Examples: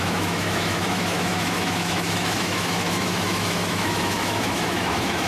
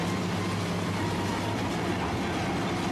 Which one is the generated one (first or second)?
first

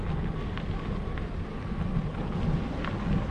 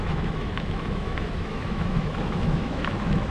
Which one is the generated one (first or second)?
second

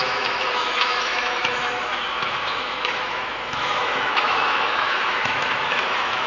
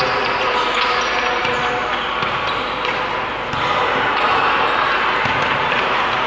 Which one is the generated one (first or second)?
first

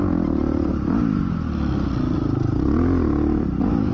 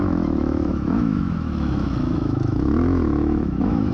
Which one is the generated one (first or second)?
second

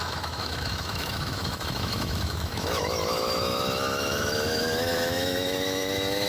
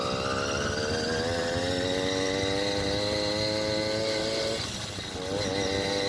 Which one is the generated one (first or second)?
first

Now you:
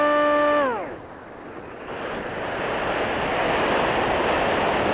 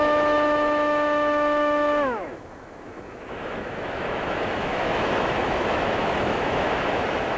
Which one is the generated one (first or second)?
second